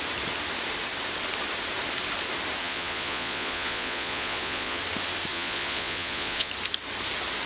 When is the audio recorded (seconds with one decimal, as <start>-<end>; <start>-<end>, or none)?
0.0-2.6; 4.8-5.3; 6.5-7.5